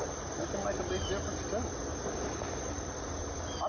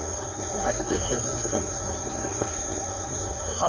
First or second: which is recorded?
first